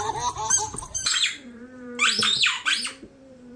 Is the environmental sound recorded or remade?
remade